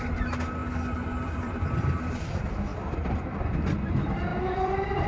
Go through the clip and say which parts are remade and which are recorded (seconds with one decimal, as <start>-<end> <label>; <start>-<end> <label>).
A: 0.0-0.6 recorded; 0.6-2.0 remade; 2.0-4.3 recorded; 4.3-5.1 remade